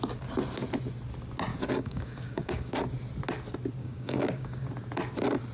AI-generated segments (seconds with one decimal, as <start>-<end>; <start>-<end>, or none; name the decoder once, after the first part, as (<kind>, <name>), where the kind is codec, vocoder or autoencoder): 1.5-2.7 (codec, DAC); 3.8-4.7